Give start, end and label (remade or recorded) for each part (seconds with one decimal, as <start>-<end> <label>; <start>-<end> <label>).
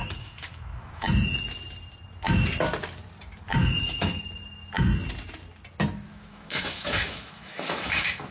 0.0-1.1 remade; 1.1-3.6 recorded; 3.6-4.2 remade; 4.2-6.1 recorded; 6.1-8.3 remade